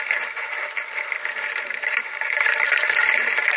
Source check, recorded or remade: remade